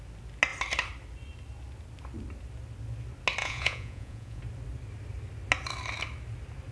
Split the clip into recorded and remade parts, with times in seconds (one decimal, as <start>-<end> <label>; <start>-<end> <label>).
0.0-3.4 recorded; 3.4-4.4 remade; 4.4-6.7 recorded